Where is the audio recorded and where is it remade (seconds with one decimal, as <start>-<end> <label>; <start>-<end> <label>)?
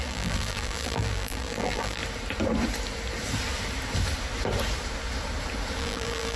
0.0-2.0 remade; 2.0-5.8 recorded; 5.8-6.4 remade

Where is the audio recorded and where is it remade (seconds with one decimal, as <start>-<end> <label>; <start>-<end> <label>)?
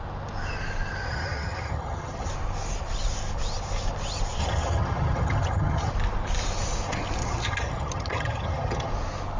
0.0-1.1 recorded; 1.1-2.3 remade; 2.3-4.4 recorded; 4.4-5.9 remade; 5.9-7.2 recorded; 7.2-8.9 remade; 8.9-9.4 recorded